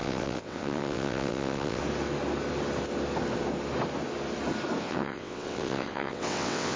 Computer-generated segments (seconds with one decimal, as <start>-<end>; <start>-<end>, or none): 0.0-1.8; 4.8-6.8